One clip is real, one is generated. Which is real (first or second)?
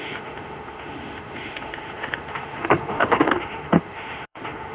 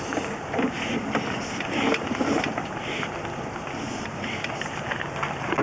second